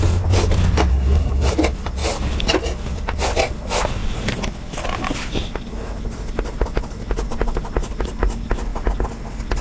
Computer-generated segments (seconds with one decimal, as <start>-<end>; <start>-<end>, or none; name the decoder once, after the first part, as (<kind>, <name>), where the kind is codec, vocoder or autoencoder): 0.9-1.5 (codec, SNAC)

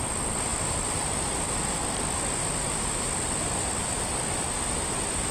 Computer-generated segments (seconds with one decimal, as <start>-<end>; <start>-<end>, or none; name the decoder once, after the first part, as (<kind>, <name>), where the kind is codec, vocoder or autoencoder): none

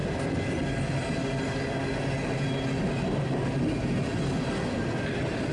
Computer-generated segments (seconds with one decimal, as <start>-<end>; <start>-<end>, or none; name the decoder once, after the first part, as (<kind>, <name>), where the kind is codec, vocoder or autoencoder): none

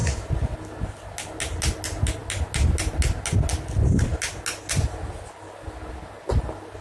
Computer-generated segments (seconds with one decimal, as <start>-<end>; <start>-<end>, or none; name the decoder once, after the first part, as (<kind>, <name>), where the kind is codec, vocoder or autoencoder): none